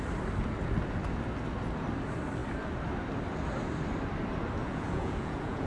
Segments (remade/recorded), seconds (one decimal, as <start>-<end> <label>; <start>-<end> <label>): 0.0-4.6 recorded; 4.6-5.7 remade